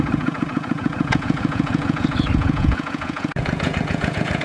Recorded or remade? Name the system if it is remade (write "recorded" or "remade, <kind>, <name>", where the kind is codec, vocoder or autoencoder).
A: remade, vocoder, Vocos